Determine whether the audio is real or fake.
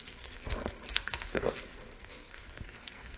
fake